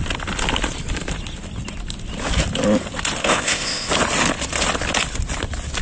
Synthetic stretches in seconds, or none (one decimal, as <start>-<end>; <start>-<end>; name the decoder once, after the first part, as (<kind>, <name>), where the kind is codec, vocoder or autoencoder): 3.2-3.9 (codec, ZipCodec)